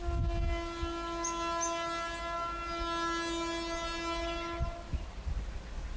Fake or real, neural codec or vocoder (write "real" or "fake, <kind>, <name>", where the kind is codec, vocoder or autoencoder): real